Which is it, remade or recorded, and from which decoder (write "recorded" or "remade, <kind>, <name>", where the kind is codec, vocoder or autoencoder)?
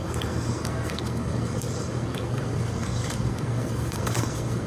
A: remade, codec, SNAC